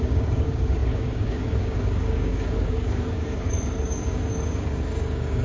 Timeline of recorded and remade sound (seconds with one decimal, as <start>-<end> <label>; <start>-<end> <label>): 0.0-5.4 remade